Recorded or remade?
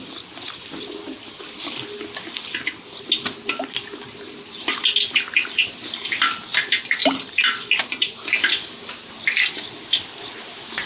recorded